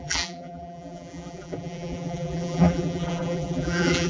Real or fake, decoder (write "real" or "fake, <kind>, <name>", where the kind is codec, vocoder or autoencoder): fake, vocoder, BigVGAN v2